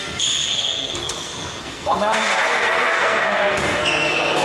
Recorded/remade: remade